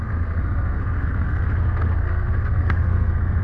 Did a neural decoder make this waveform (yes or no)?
yes